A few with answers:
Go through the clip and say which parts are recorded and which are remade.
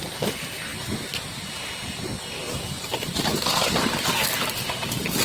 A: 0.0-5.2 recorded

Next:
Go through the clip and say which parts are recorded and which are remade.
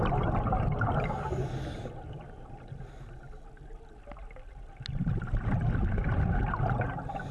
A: 0.0-7.3 recorded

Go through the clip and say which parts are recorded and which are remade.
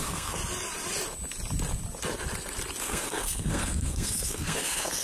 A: 0.0-0.4 remade; 0.4-2.8 recorded; 2.8-5.0 remade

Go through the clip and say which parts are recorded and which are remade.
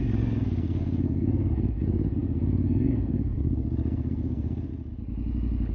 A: 0.0-4.7 remade; 4.7-5.7 recorded